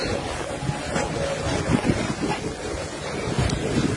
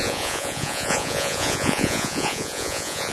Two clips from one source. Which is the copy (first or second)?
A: second